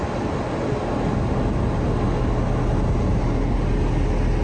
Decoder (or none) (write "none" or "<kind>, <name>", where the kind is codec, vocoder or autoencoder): none